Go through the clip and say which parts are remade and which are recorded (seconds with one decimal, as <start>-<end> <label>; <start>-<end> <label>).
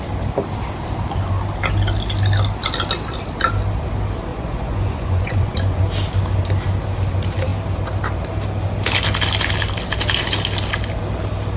0.0-4.3 recorded; 4.3-5.8 remade; 5.8-11.6 recorded